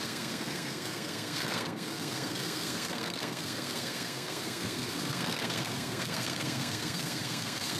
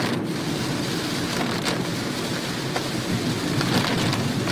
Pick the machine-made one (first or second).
first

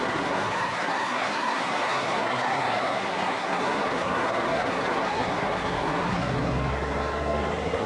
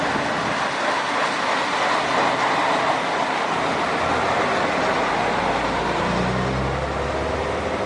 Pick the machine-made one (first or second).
first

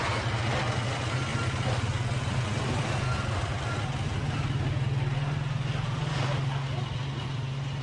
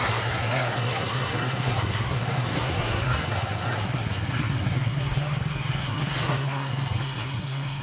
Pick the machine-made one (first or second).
second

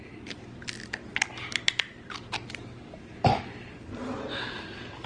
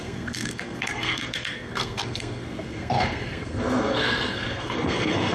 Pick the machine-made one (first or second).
second